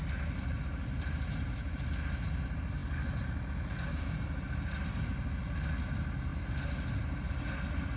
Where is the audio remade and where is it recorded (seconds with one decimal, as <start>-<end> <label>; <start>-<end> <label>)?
0.0-8.0 recorded